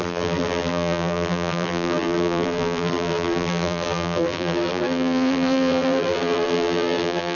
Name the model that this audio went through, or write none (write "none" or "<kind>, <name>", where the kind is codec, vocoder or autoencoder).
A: vocoder, BigVGAN v2